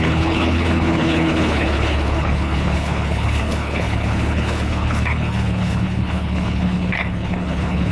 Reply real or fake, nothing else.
fake